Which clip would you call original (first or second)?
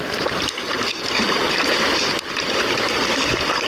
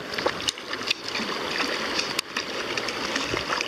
second